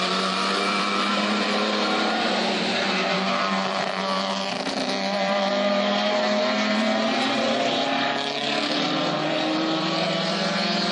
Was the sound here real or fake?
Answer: fake